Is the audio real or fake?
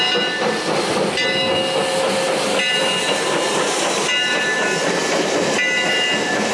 real